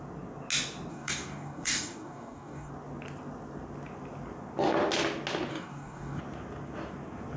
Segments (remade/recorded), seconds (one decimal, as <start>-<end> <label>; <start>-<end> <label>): 0.0-0.9 recorded; 0.9-2.7 remade; 2.7-5.5 recorded; 5.5-6.2 remade; 6.2-7.4 recorded